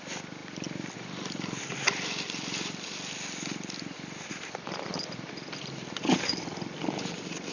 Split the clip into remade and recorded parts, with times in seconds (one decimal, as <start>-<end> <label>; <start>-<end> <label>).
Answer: 0.0-7.5 recorded